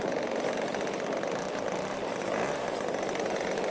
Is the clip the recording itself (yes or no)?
yes